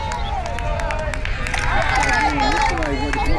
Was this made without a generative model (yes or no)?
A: yes